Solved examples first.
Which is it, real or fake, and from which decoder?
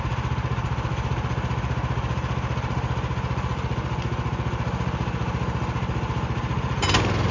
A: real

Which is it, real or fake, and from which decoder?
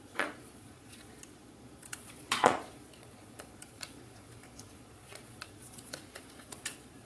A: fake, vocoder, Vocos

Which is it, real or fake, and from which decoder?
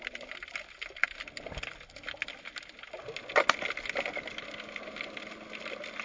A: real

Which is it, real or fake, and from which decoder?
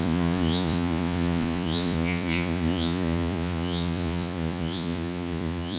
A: fake, vocoder, Vocos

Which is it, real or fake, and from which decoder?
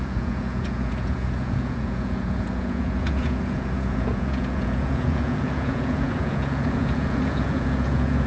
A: fake, vocoder, Vocos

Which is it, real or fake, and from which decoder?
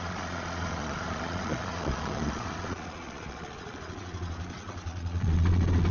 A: fake, vocoder, Vocos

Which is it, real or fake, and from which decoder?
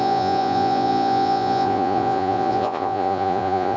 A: fake, vocoder, Vocos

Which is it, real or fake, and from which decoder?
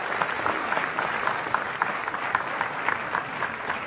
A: real